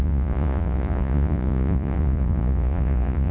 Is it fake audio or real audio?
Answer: fake